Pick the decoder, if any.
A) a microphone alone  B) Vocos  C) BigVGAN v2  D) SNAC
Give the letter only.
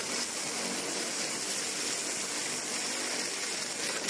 A